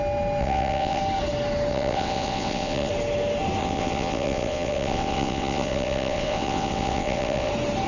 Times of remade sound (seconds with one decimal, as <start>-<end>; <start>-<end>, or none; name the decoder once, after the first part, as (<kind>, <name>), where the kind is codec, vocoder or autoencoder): 0.4-1.0 (vocoder, WaveNeXt); 1.7-2.9; 3.6-7.5